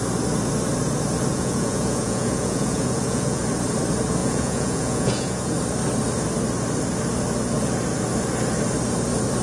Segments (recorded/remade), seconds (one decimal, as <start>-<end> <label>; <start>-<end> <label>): 0.0-1.3 recorded; 1.3-3.4 remade; 3.4-4.2 recorded; 4.2-5.5 remade; 5.5-9.4 recorded